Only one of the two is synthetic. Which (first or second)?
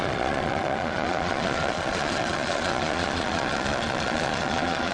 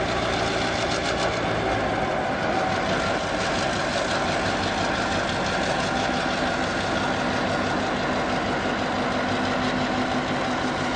first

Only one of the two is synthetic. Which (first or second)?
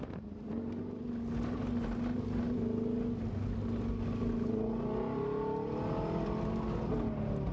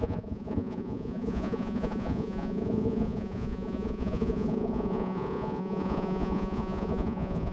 second